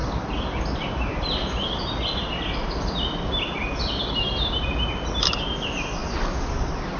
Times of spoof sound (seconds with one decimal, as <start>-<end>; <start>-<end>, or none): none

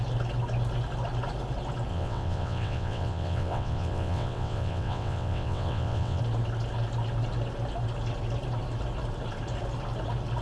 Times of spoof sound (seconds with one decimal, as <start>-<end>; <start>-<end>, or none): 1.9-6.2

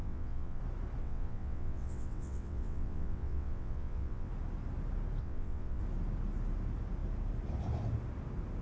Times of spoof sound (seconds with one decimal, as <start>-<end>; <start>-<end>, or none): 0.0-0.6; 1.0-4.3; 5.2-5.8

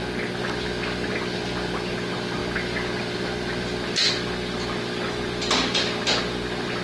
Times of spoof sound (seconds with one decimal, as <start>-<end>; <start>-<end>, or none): none

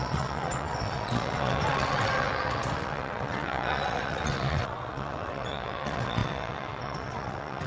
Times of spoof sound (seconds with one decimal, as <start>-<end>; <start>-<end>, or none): 0.0-7.7